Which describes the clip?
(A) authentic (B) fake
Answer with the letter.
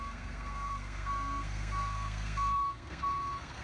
B